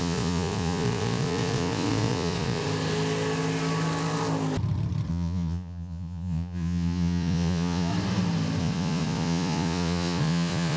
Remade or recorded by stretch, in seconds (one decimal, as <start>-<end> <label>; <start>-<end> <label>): 0.0-2.6 remade; 2.6-5.1 recorded; 5.1-7.9 remade; 7.9-8.6 recorded; 8.6-10.8 remade